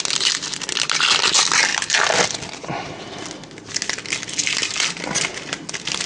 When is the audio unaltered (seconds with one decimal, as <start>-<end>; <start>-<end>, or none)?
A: 0.0-6.1